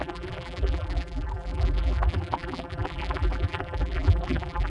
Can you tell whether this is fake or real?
fake